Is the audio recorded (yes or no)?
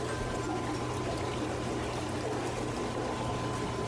yes